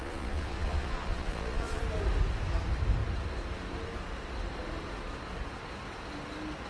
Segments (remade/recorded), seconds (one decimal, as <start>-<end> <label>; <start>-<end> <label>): 0.0-1.8 remade; 1.8-6.7 recorded